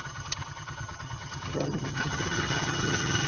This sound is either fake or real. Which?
fake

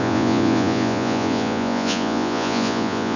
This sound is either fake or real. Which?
fake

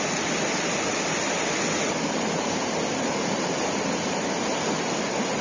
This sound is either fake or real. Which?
real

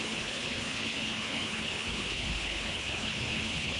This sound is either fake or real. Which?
fake